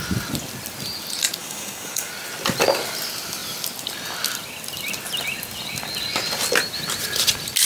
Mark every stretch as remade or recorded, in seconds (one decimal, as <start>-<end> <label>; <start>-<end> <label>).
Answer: 0.0-1.4 recorded; 1.4-2.1 remade; 2.1-7.7 recorded